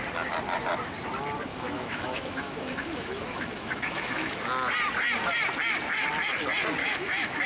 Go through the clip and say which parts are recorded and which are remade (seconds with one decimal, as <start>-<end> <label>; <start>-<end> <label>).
0.0-1.5 recorded; 1.5-4.4 remade; 4.4-6.8 recorded; 6.8-7.5 remade